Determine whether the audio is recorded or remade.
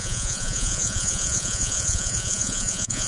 remade